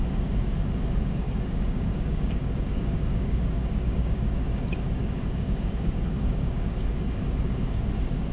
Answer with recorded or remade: remade